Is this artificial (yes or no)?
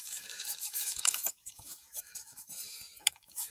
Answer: yes